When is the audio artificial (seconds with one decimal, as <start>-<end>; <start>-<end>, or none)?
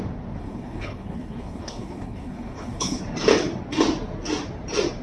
0.4-3.0